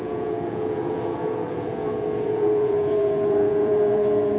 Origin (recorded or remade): remade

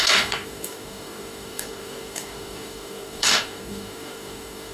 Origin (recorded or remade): remade